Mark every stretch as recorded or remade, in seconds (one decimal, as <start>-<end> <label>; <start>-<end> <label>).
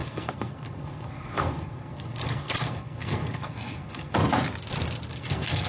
0.0-4.2 remade; 4.2-5.1 recorded; 5.1-5.7 remade